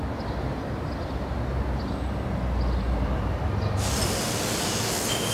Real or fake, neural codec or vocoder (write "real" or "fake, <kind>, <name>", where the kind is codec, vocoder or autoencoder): real